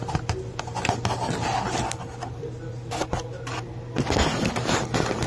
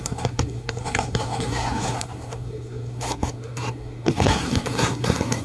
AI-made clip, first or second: second